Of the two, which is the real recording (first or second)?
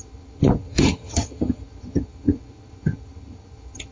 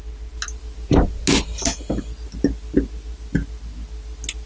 second